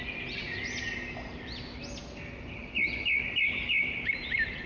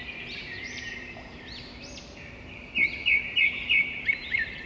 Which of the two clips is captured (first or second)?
first